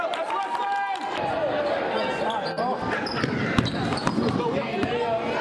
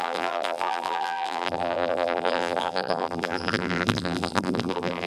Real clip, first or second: first